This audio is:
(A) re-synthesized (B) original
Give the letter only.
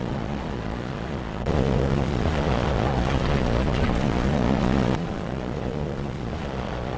A